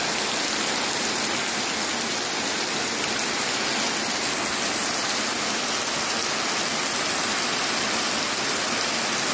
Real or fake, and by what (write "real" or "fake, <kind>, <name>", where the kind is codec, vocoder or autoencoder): real